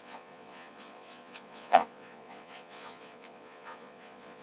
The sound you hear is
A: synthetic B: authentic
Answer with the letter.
A